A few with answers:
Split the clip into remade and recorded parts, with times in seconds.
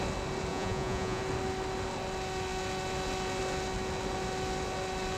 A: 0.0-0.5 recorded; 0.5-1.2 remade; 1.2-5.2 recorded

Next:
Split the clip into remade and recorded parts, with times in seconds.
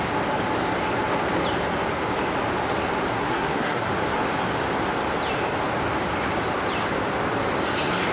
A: 0.0-3.1 recorded; 3.1-3.9 remade; 3.9-8.1 recorded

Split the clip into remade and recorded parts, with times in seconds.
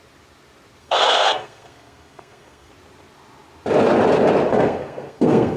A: 0.0-0.8 recorded; 0.8-2.7 remade; 2.7-4.5 recorded; 4.5-5.6 remade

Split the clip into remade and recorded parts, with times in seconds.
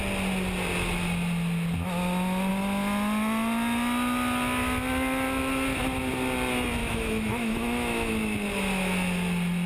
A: 0.0-6.8 recorded; 6.8-8.1 remade; 8.1-9.7 recorded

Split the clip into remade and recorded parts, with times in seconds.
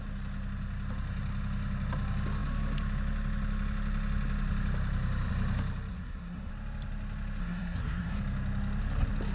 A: 0.0-5.9 recorded; 5.9-6.5 remade; 6.5-7.4 recorded; 7.4-8.2 remade; 8.2-9.3 recorded